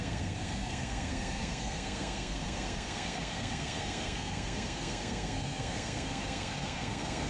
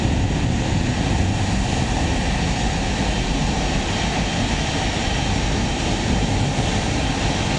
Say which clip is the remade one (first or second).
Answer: first